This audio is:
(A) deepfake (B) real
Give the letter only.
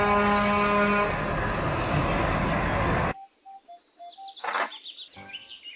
B